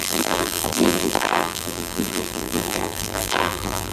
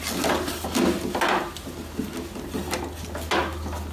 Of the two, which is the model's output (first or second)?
first